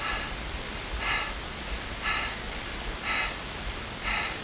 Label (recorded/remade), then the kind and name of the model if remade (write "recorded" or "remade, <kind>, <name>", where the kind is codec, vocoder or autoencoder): recorded